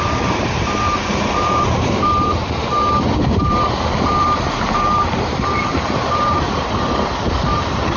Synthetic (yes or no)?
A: yes